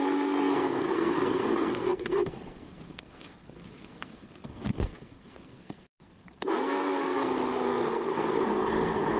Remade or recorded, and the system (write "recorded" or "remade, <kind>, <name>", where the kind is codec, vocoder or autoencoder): remade, codec, SNAC